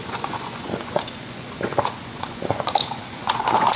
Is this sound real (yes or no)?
no